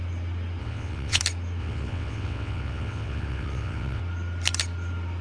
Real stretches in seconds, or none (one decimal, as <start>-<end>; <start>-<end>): 0.0-0.6; 1.2-1.6; 4.0-5.2